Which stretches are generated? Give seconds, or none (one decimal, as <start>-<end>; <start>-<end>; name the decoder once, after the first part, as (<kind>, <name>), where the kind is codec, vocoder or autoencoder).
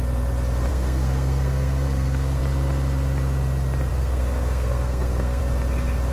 0.7-2.4 (codec, SNAC); 3.9-5.4